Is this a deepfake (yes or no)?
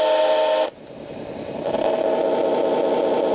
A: no